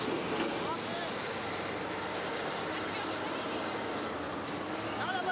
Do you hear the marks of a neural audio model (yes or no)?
no